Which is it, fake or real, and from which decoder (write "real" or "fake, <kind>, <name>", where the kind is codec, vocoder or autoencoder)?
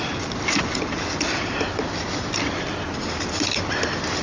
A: real